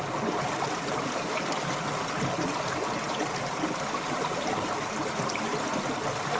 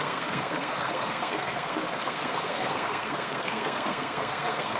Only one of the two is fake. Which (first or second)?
second